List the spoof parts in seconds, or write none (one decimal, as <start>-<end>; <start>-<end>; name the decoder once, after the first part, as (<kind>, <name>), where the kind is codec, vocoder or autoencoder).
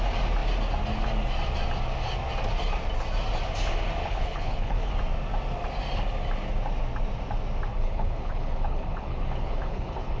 4.0-4.9 (codec, HILCodec); 7.7-10.2